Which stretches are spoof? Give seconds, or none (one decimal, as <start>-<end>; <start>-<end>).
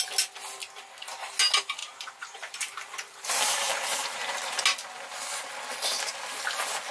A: 1.8-4.6